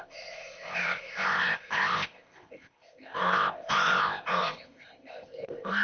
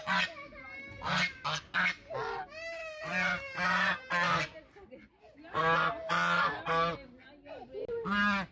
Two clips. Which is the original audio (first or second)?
second